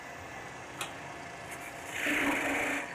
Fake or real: real